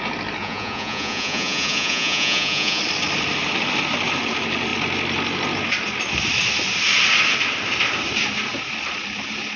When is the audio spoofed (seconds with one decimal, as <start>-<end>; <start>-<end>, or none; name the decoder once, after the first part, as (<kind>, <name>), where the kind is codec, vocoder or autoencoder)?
0.4-2.8 (vocoder, Vocos)